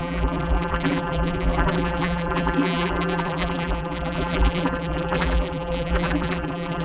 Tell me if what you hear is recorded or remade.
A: remade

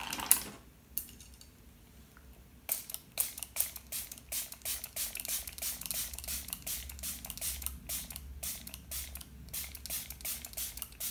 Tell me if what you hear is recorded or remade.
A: recorded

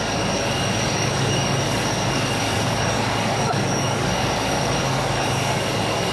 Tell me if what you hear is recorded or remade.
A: remade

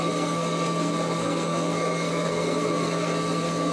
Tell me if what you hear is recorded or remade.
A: remade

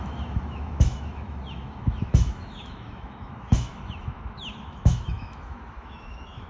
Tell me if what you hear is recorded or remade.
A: remade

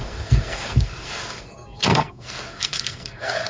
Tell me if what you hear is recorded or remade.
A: remade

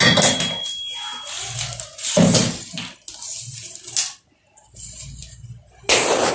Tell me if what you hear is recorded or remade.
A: recorded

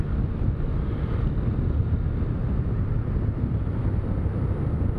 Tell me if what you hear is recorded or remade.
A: recorded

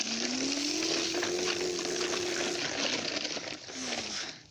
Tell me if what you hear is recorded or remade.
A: recorded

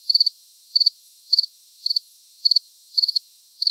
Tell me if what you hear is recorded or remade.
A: remade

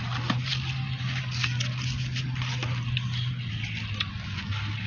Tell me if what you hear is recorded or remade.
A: recorded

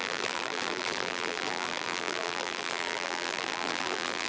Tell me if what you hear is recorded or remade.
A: remade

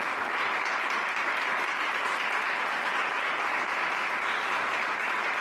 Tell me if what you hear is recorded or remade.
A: recorded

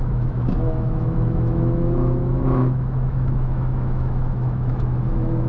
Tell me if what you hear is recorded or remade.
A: remade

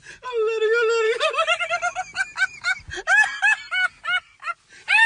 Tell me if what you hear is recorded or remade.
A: recorded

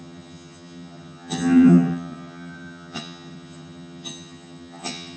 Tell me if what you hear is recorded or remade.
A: remade